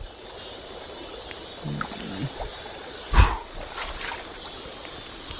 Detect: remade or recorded recorded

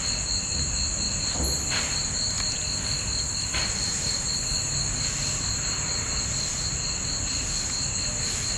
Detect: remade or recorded recorded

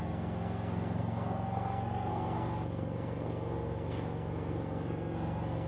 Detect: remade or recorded remade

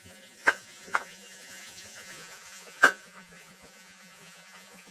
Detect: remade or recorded remade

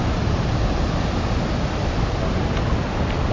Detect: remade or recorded recorded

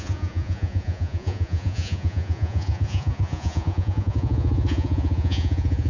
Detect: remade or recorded remade